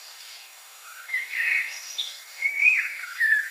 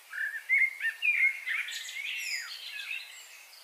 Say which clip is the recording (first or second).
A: second